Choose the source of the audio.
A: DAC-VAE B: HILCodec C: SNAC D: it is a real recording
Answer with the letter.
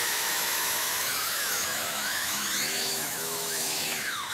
A